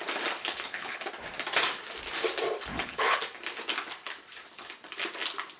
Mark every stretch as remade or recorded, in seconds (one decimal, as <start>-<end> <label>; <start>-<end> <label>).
0.0-0.4 recorded; 0.4-1.1 remade; 1.1-2.7 recorded; 2.7-3.2 remade; 3.2-5.6 recorded